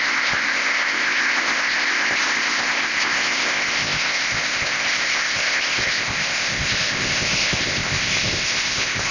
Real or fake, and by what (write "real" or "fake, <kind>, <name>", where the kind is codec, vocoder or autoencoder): fake, codec, ZipCodec